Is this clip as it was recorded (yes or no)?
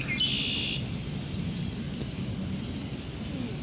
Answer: yes